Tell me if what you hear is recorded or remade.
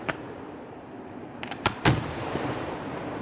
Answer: remade